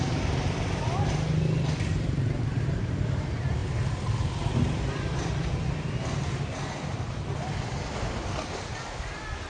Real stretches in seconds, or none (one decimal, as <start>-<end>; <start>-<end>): 0.0-9.5